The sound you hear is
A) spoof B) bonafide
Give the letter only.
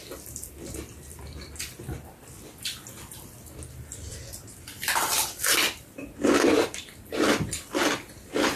A